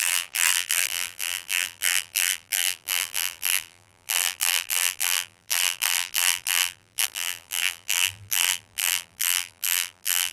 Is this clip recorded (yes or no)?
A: no